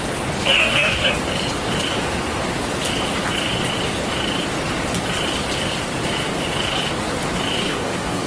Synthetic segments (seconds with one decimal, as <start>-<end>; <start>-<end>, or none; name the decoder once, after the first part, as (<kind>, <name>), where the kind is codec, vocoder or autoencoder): 0.4-1.1 (codec, DAC); 7.6-8.3

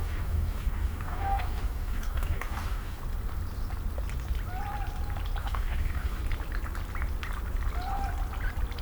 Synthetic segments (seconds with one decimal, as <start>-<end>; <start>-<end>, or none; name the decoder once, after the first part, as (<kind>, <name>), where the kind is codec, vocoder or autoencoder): 0.0-3.0 (codec, DAC); 5.4-6.2